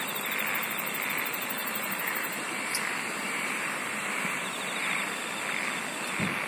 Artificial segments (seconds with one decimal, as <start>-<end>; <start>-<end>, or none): 1.6-5.2

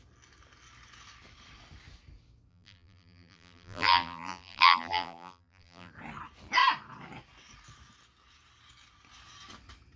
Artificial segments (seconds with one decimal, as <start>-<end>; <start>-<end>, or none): 2.5-5.9